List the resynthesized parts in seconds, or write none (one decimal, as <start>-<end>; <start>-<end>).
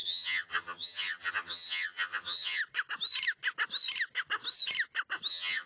0.0-2.6; 5.3-5.7